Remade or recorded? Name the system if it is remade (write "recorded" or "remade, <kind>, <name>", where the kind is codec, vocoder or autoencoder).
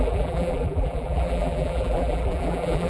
remade, vocoder, BigVGAN v2